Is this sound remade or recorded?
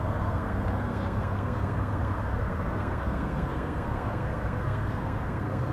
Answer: remade